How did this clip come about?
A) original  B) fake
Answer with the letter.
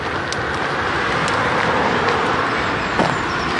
A